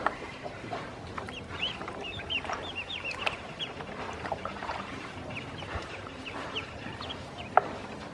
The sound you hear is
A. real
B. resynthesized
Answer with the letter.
B